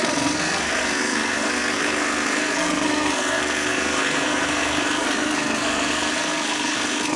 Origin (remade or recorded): remade